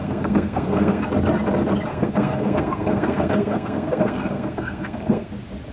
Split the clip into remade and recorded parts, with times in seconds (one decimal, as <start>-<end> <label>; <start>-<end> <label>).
0.0-1.1 remade; 1.1-1.9 recorded; 1.9-5.3 remade; 5.3-5.7 recorded